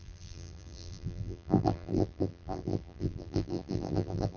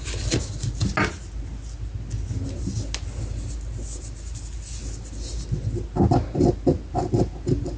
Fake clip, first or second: first